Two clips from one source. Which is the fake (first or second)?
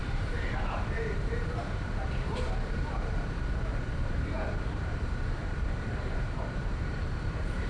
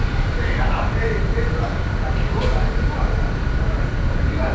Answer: first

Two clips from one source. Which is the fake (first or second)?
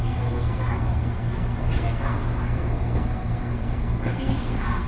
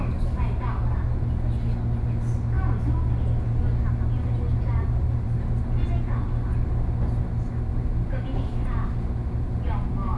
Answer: first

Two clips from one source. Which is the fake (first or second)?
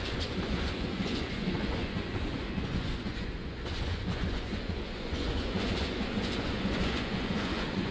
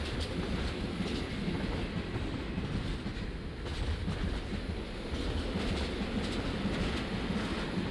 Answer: first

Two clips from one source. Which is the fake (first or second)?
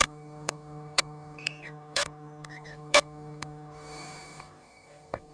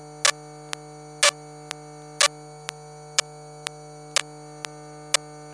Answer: first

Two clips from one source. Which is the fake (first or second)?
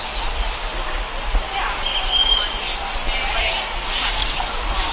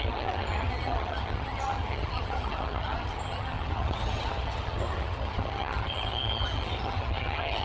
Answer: second